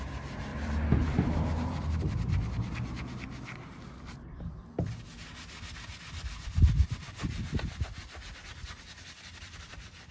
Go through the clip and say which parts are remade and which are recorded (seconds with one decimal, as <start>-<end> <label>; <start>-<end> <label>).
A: 0.0-0.5 recorded; 0.5-2.0 remade; 2.0-10.1 recorded